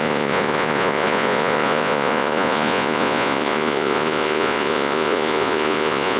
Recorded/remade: remade